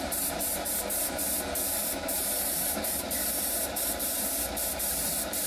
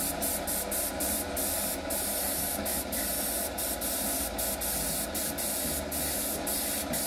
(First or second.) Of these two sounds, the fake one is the first